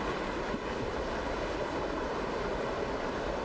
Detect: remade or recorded recorded